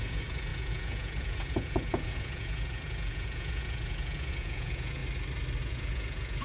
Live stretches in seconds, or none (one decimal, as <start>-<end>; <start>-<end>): 5.0-5.6

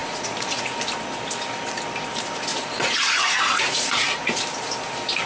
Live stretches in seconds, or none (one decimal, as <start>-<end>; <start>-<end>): 0.8-2.5; 4.4-5.3